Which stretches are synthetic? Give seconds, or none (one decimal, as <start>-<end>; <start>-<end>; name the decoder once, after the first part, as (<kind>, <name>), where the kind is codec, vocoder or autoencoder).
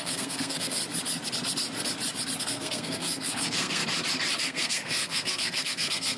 0.0-0.8 (codec, SNAC); 2.4-3.8; 4.4-6.2